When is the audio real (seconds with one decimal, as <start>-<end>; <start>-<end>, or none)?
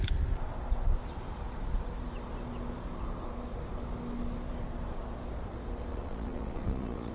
0.0-5.9